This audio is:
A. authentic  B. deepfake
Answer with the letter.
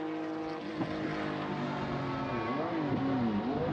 A